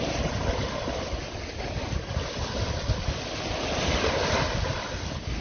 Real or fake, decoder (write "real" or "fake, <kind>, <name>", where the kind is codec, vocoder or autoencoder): real